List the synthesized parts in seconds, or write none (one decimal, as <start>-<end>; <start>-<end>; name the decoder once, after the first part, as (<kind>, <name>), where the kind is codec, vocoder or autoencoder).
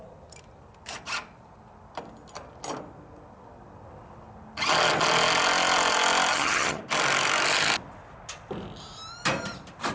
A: 6.3-6.8 (vocoder, HiFi-GAN)